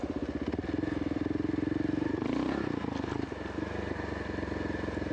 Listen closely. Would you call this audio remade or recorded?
remade